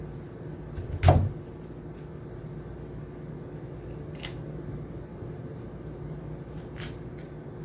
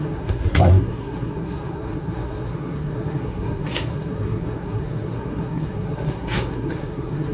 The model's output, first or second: second